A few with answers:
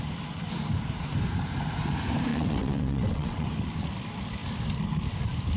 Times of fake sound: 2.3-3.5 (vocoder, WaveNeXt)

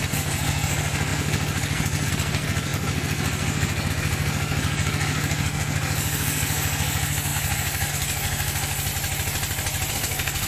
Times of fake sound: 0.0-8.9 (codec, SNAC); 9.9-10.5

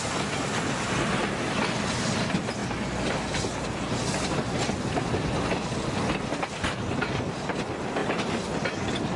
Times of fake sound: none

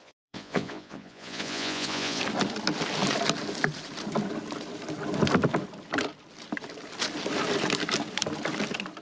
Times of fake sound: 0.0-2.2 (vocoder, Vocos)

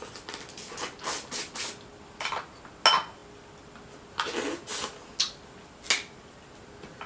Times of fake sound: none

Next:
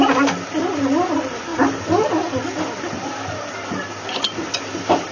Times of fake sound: none